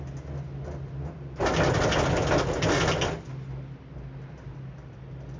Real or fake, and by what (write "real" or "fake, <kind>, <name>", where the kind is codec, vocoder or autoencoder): real